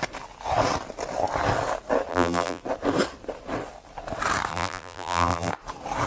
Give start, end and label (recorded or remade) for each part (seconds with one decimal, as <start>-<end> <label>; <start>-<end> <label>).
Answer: 0.0-2.1 recorded; 2.1-2.6 remade; 2.6-4.5 recorded; 4.5-5.5 remade; 5.5-6.1 recorded